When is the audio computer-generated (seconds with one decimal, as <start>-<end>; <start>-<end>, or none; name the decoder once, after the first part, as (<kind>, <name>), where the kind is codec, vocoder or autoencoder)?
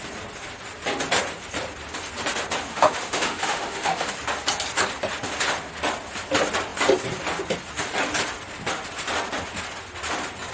2.7-4.1 (autoencoder, DAC-VAE)